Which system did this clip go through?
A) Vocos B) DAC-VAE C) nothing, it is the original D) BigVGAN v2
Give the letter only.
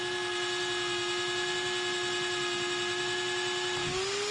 C